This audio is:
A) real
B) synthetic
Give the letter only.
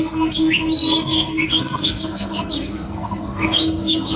B